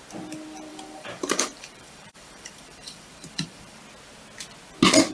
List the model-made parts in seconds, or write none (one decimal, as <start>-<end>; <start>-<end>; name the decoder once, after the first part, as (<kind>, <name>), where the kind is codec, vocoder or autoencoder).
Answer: 0.7-3.8 (vocoder, BigVGAN v2)